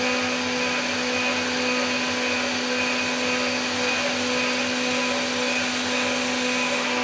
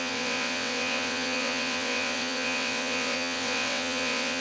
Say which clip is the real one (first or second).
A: first